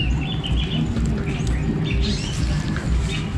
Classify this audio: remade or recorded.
recorded